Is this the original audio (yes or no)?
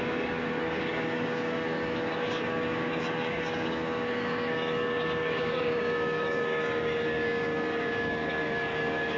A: no